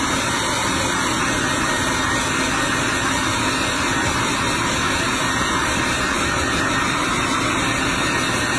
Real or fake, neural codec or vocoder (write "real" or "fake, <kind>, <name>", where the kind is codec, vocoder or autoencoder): real